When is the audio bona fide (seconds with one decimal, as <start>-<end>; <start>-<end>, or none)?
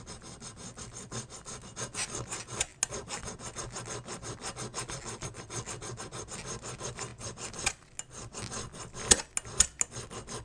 0.0-10.4